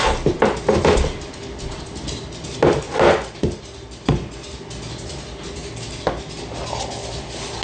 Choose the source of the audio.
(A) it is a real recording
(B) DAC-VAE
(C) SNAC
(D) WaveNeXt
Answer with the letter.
A